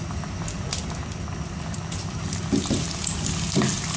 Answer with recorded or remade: recorded